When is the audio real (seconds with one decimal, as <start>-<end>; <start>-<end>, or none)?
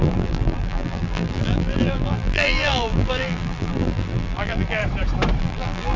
4.8-5.4